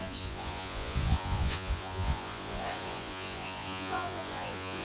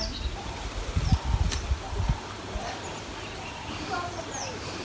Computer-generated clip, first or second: first